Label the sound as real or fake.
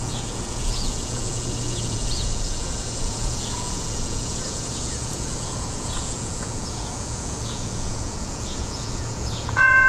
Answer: fake